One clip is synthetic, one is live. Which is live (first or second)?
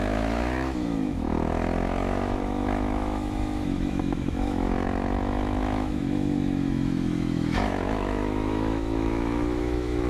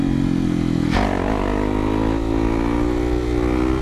second